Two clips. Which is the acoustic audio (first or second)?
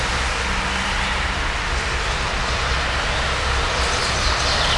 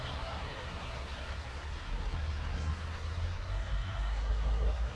first